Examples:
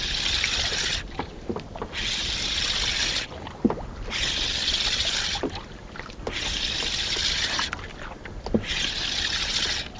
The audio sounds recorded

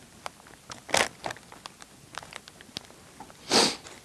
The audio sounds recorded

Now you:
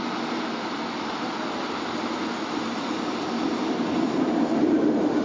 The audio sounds recorded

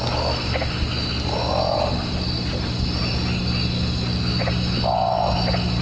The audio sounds recorded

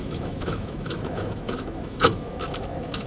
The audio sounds remade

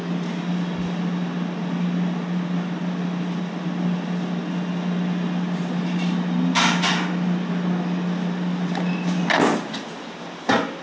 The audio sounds recorded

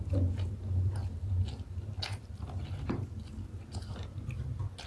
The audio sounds recorded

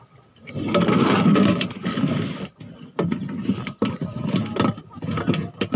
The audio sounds remade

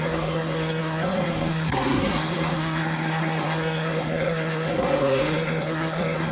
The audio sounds remade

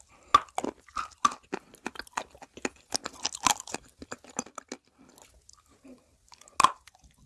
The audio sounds recorded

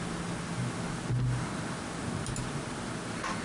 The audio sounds recorded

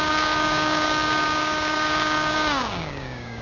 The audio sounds remade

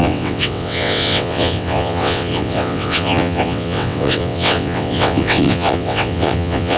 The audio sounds remade